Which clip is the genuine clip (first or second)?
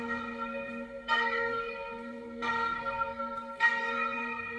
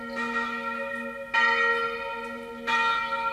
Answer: second